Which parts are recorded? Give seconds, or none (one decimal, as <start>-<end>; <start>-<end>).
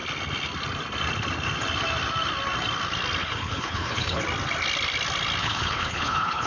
0.0-3.2; 4.2-5.4